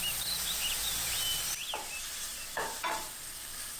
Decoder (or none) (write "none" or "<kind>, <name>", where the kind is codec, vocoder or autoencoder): none